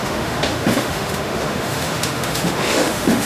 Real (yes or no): no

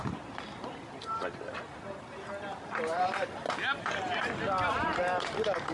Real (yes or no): yes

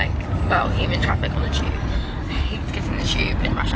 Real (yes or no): yes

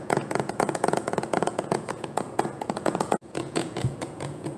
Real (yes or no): no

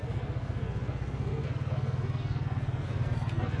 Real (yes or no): no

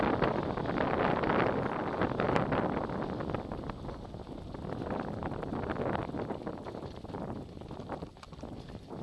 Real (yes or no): yes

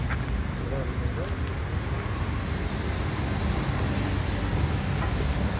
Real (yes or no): yes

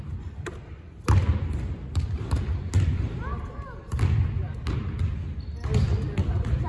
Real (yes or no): yes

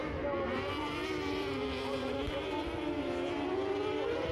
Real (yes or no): yes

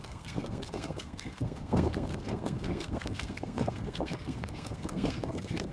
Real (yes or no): no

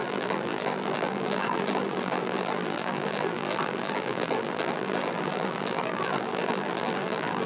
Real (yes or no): no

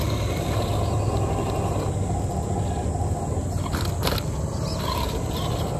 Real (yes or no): yes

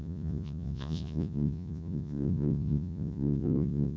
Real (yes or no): no